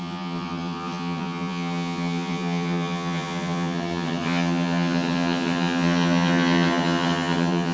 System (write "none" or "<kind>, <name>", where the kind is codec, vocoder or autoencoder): vocoder, HiFi-GAN